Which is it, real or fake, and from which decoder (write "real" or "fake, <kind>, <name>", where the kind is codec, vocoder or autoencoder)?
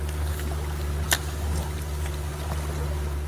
real